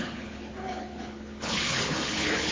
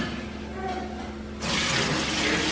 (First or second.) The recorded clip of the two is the second